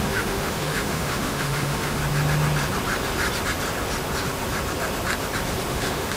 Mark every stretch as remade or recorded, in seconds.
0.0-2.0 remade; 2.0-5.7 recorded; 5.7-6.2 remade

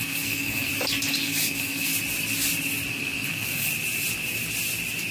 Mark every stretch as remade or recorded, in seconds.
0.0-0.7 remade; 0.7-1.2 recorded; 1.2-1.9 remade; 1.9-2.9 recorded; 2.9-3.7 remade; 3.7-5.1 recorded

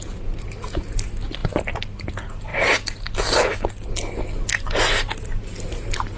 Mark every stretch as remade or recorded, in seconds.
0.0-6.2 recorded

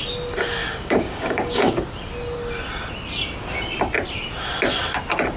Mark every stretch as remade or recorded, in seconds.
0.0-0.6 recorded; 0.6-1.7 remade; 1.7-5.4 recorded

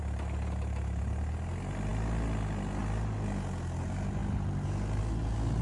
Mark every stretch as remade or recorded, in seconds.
0.0-5.6 recorded